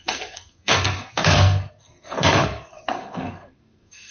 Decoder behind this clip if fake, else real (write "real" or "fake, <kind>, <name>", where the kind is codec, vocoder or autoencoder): fake, codec, SNAC